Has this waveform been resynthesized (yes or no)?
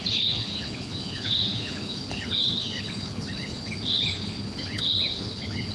yes